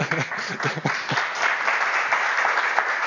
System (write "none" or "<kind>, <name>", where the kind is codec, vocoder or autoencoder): none